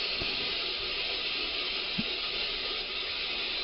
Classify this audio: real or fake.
real